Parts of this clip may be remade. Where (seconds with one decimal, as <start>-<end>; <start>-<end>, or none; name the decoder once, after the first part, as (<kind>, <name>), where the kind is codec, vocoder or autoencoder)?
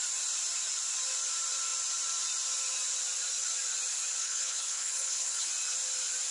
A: 4.2-5.5 (codec, HILCodec)